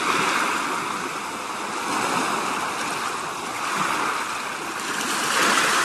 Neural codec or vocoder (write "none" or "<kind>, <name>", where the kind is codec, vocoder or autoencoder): none